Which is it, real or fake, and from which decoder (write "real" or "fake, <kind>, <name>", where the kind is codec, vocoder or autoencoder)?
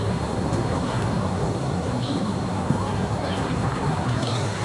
fake, codec, SNAC